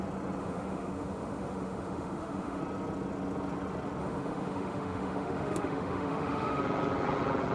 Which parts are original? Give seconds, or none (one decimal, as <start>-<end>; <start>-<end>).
0.0-0.4; 2.6-4.0; 6.6-7.5